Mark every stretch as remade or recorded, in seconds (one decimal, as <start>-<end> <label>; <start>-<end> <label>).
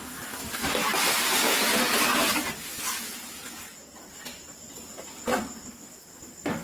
0.0-6.6 recorded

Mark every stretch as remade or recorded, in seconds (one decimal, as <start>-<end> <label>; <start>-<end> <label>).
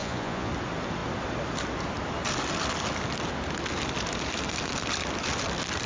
0.0-0.5 remade; 0.5-5.9 recorded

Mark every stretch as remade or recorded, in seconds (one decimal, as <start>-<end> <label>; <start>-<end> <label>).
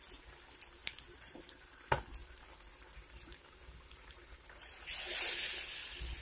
0.0-0.8 recorded; 0.8-1.8 remade; 1.8-2.2 recorded; 2.2-5.0 remade; 5.0-6.2 recorded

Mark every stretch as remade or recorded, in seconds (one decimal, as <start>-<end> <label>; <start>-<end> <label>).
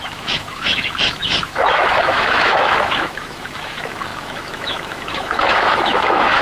0.0-6.4 remade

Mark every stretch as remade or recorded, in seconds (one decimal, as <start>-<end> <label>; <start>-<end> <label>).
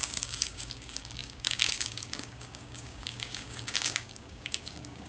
0.0-5.1 remade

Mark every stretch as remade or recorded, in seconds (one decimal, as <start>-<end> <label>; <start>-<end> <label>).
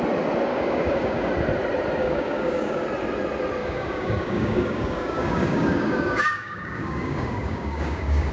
0.0-0.5 recorded; 0.5-1.3 remade; 1.3-2.0 recorded; 2.0-2.8 remade; 2.8-3.6 recorded; 3.6-8.3 remade